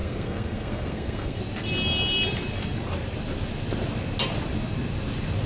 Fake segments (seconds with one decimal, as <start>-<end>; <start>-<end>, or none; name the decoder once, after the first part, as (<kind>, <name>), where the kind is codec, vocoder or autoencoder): 0.0-1.4 (codec, SNAC)